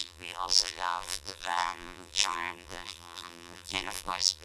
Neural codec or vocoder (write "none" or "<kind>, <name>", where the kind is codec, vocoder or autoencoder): vocoder, BigVGAN v2